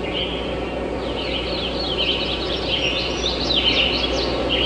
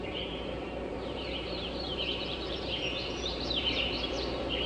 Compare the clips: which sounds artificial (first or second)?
second